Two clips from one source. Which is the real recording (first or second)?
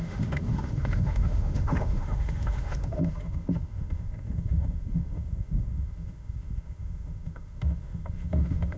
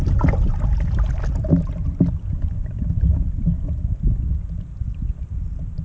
second